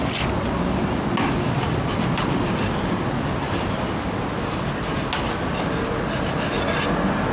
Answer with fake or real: real